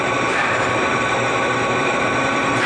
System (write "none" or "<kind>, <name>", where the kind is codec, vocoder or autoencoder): vocoder, BigVGAN v2